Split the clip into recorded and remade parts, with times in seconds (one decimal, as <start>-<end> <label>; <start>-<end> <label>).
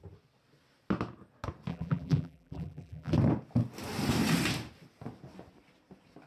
0.0-1.7 recorded; 1.7-3.1 remade; 3.1-6.3 recorded